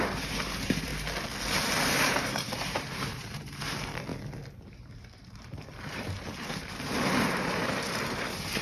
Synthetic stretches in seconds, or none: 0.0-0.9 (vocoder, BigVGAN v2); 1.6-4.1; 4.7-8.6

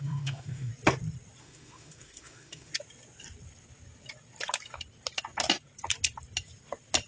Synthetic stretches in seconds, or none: 0.0-0.7 (autoencoder, DAC-VAE); 1.4-2.7